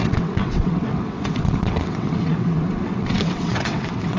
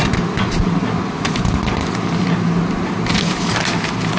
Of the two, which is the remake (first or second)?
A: first